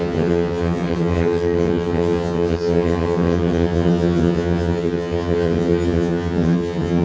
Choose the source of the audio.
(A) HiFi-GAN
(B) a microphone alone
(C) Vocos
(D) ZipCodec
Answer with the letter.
A